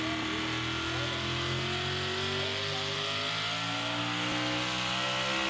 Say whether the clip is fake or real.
real